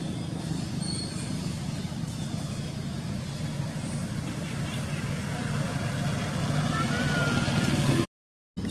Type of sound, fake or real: real